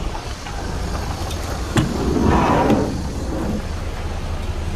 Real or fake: real